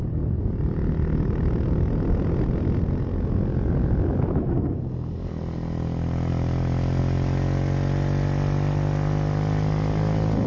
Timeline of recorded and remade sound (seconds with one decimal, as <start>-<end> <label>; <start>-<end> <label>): 0.0-4.3 recorded; 4.3-4.8 remade; 4.8-10.5 recorded